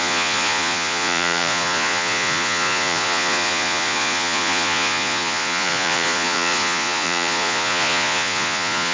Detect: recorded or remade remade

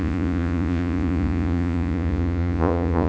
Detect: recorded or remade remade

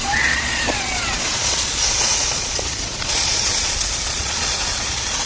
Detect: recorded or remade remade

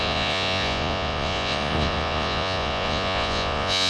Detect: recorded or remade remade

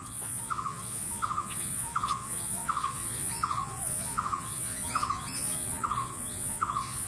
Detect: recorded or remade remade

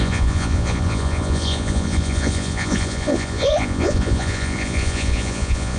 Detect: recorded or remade remade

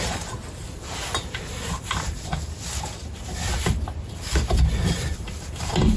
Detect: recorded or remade recorded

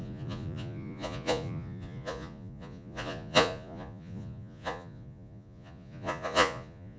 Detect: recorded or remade remade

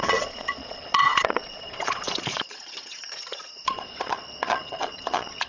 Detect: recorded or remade remade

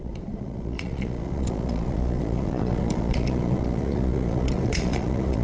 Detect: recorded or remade remade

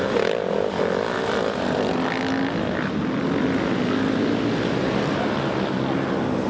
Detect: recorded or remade recorded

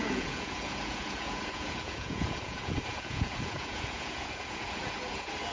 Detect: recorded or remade remade